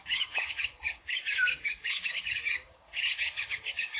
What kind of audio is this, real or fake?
fake